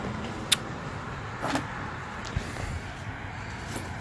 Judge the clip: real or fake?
real